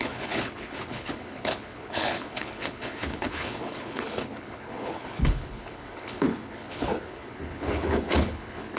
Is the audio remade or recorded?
remade